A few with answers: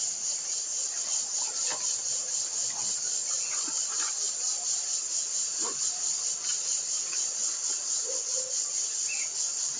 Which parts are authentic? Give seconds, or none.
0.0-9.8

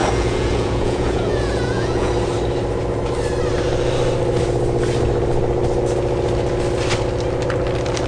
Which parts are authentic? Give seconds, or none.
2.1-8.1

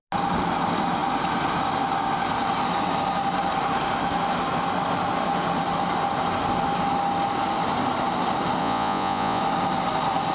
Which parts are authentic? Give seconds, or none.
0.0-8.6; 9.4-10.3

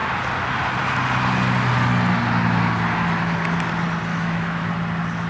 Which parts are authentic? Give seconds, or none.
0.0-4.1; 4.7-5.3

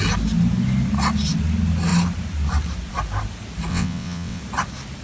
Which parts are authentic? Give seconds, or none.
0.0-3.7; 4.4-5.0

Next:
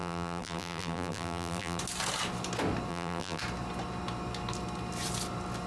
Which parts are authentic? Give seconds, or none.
1.8-2.9; 3.4-5.7

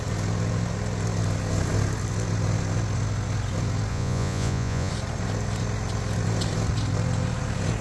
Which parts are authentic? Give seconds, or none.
0.0-3.9; 4.9-7.8